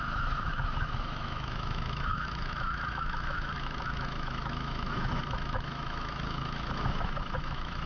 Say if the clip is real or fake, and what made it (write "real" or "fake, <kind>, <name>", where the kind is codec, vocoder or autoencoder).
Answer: fake, autoencoder, DAC-VAE